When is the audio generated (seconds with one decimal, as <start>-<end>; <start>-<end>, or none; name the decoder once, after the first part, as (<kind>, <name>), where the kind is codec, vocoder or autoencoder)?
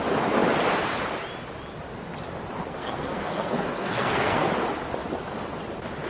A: 2.6-4.5 (codec, SNAC)